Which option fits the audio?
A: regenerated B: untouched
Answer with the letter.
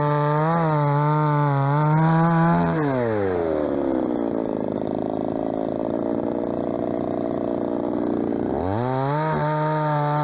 B